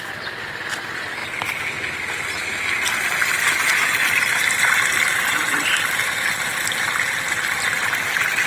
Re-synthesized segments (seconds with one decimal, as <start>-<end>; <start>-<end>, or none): none

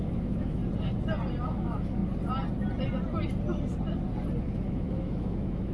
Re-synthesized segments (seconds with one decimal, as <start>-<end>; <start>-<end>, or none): 0.0-0.6; 1.4-2.0; 4.4-5.7

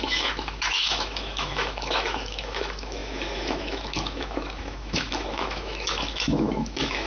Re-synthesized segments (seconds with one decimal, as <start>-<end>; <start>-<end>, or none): 0.0-7.1

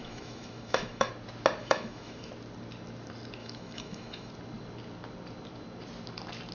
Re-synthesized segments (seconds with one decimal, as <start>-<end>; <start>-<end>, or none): 0.0-1.1; 1.6-2.3; 3.4-4.3

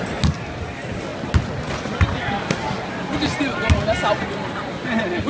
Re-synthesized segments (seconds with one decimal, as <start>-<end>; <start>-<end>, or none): none